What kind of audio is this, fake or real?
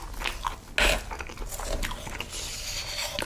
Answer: real